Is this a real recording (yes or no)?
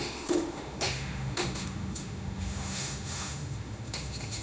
no